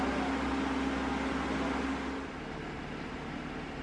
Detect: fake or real real